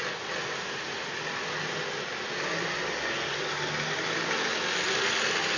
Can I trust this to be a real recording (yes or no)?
yes